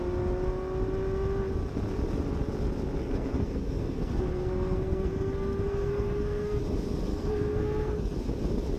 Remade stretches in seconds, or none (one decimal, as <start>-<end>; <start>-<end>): 3.0-6.6; 7.1-8.2